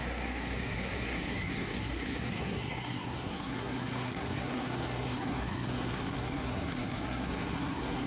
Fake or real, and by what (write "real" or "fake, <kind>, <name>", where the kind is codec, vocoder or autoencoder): fake, codec, SNAC